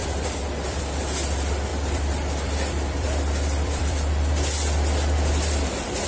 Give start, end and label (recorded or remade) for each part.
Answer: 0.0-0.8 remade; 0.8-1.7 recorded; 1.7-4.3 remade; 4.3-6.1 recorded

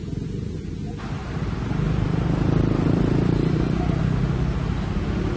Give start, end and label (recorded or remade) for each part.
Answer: 0.0-1.2 recorded; 1.2-4.0 remade; 4.0-5.4 recorded

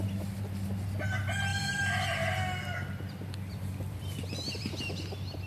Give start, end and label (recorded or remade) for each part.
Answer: 0.0-1.5 recorded; 1.5-4.8 remade; 4.8-5.5 recorded

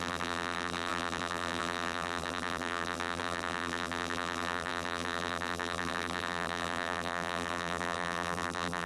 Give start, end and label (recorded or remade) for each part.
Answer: 0.0-8.9 remade